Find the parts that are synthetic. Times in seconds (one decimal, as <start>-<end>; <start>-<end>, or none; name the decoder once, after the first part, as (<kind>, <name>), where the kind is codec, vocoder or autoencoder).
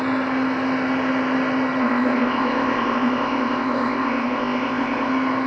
1.8-5.1 (codec, ZipCodec)